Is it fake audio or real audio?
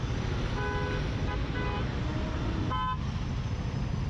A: real